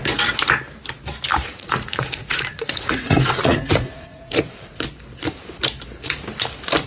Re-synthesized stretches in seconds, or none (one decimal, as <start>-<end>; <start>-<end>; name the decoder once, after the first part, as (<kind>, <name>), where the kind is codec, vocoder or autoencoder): 1.3-4.8 (vocoder, Vocos)